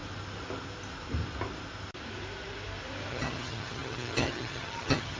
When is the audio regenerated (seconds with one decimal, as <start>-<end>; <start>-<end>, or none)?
3.1-5.2